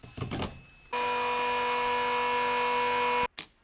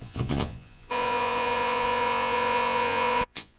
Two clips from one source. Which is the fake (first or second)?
second